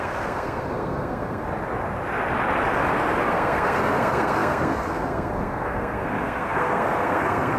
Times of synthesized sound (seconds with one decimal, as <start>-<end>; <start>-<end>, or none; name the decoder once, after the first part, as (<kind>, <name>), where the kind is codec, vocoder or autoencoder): 0.0-1.5 (codec, SNAC); 3.2-7.6